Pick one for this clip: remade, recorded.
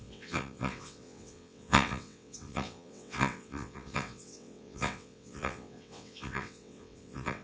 remade